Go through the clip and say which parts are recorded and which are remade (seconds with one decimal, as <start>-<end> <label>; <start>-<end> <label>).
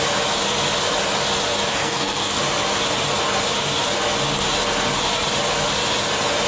0.0-1.7 recorded; 1.7-2.4 remade; 2.4-6.5 recorded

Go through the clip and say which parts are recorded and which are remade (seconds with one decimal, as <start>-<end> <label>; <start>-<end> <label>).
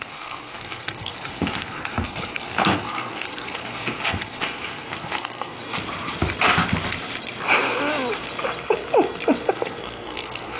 0.0-5.6 remade; 5.6-9.5 recorded; 9.5-10.6 remade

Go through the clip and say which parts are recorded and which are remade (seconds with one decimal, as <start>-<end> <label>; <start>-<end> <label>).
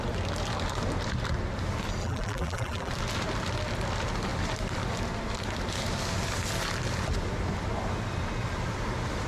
0.0-2.0 recorded; 2.0-2.9 remade; 2.9-9.3 recorded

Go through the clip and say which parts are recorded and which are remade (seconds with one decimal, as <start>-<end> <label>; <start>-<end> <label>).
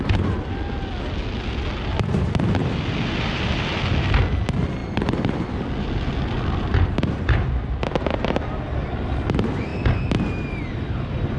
0.0-11.4 recorded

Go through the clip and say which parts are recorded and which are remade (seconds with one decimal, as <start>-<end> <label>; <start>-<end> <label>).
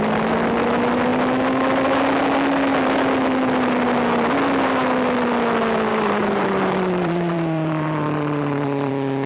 0.0-5.9 recorded; 5.9-8.9 remade; 8.9-9.3 recorded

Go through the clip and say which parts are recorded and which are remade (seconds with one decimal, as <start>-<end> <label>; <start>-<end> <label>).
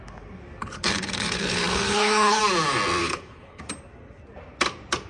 0.0-0.6 recorded; 0.6-2.4 remade; 2.4-3.0 recorded; 3.0-3.6 remade; 3.6-5.1 recorded